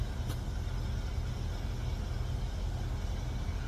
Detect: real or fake real